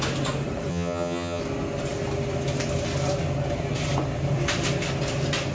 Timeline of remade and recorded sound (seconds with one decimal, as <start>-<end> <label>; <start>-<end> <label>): 0.0-0.7 recorded; 0.7-1.4 remade; 1.4-5.5 recorded